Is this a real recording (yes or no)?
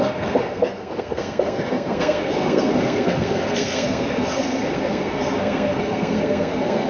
no